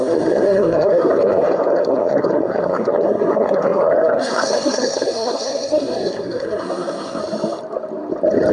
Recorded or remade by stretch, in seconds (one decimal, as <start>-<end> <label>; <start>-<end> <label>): 0.0-7.2 remade; 7.2-8.5 recorded